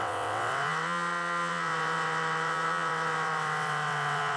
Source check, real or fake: fake